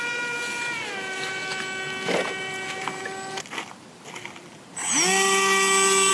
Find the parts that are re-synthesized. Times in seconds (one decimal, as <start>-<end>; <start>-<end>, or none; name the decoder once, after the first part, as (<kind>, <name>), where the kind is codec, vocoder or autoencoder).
0.0-1.4 (vocoder, BigVGAN v2); 2.4-3.0